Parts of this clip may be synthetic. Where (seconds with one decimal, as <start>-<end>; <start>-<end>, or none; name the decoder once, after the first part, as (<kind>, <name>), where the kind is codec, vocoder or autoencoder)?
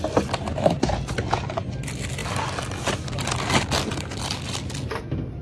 none